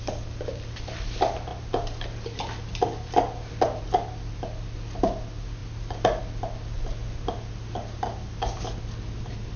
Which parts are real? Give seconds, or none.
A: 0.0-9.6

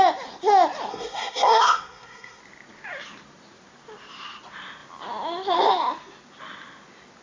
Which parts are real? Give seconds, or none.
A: 0.0-0.9; 2.4-7.2

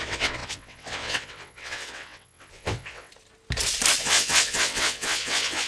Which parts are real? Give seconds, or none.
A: 3.1-4.0

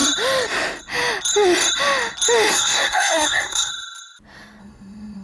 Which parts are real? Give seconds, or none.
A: 0.0-2.5; 3.7-4.6

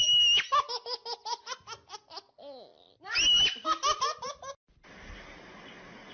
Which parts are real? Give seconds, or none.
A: 0.0-6.1

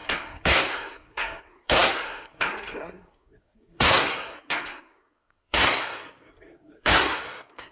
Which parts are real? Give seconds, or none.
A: none